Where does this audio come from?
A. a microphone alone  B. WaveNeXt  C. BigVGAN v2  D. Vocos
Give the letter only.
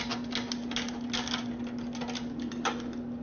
A